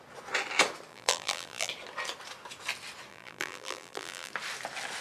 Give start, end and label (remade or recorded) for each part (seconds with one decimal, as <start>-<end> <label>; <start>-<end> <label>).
0.0-0.9 recorded; 0.9-1.7 remade; 1.7-3.1 recorded; 3.1-4.3 remade; 4.3-5.0 recorded